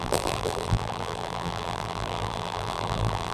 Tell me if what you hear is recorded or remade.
remade